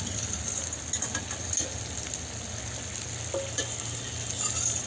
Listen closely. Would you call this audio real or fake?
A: real